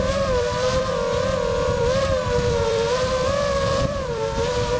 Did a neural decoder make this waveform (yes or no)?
yes